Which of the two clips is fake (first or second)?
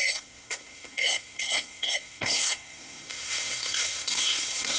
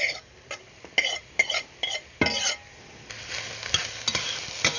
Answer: first